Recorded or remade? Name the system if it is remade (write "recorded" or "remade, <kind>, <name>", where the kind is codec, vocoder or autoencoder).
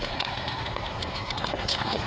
remade, codec, SNAC